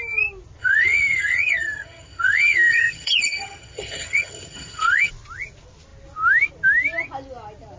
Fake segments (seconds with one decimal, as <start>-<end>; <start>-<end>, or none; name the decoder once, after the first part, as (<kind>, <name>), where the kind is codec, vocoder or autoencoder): 0.6-5.1 (vocoder, HiFi-GAN)